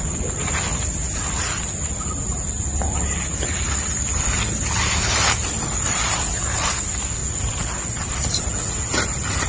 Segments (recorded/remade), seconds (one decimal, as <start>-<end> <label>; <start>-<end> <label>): 0.0-9.5 recorded